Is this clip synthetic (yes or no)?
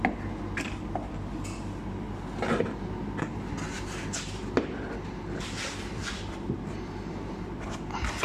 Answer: no